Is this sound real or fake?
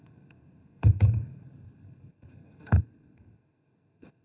fake